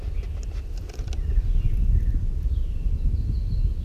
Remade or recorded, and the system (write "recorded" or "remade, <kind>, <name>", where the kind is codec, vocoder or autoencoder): recorded